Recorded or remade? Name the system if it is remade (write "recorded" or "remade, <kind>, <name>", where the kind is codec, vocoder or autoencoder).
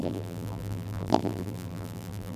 remade, vocoder, BigVGAN v2